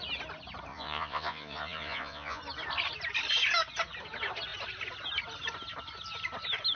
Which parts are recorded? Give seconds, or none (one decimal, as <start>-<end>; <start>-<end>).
0.0-0.7; 2.4-6.8